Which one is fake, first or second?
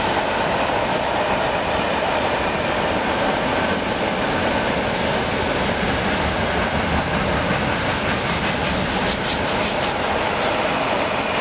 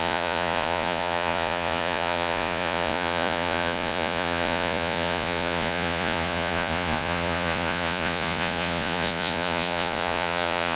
second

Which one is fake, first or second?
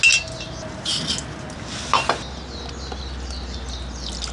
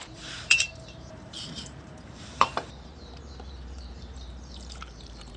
second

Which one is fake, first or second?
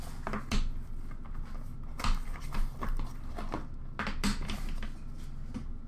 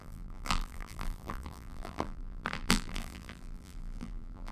second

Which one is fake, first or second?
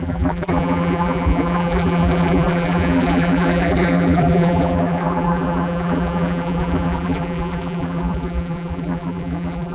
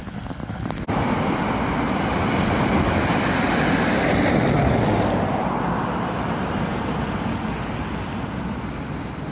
first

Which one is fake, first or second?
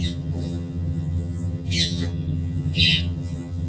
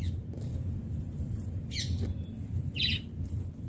first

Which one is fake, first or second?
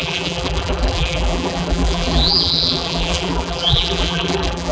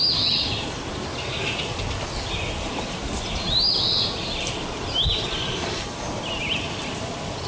first